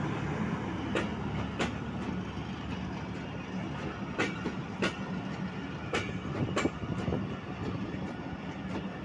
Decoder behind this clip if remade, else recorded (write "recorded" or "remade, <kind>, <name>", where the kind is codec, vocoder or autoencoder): recorded